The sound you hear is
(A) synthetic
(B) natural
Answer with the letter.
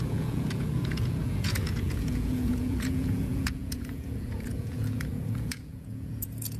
A